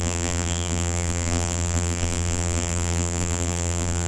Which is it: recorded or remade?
remade